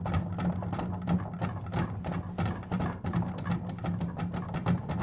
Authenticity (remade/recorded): recorded